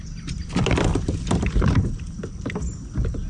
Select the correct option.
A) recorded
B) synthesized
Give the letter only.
A